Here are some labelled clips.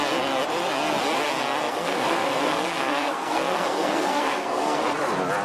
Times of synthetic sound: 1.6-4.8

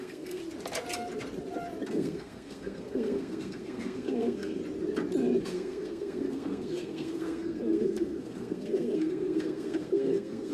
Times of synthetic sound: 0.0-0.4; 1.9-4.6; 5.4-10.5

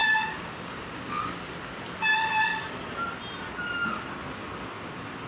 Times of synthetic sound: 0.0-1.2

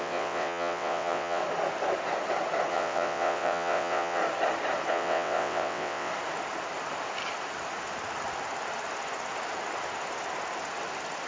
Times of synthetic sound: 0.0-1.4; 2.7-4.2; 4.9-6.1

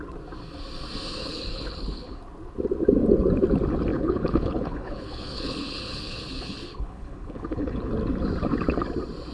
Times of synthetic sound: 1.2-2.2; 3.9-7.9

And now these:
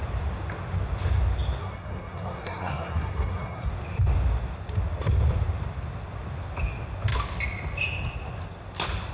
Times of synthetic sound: 1.6-3.7

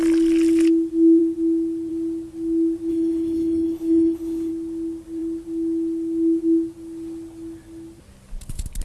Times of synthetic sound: 2.9-4.5